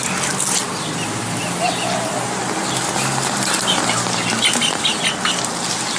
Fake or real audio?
real